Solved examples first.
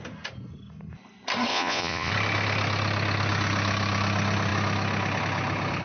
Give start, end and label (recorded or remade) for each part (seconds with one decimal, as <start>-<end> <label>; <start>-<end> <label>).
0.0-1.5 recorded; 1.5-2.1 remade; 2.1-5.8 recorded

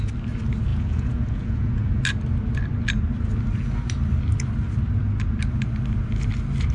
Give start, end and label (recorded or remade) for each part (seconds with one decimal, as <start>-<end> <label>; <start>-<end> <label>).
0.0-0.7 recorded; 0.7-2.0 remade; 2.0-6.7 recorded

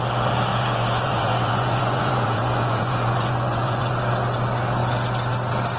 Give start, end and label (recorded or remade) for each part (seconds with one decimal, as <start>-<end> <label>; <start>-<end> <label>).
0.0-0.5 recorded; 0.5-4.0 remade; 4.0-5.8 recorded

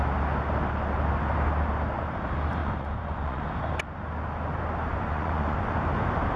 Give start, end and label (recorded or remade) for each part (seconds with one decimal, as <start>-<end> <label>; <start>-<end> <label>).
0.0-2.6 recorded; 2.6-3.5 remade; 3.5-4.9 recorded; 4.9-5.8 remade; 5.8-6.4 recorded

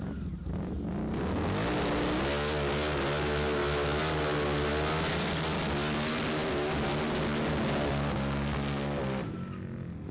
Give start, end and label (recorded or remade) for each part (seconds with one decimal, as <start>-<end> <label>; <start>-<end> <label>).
0.0-10.1 recorded

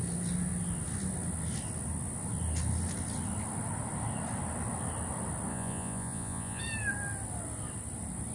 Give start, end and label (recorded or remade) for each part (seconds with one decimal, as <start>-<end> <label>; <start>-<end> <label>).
0.0-5.5 recorded; 5.5-6.6 remade; 6.6-8.3 recorded